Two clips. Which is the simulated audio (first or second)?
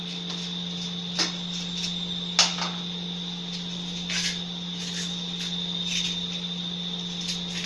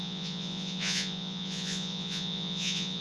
second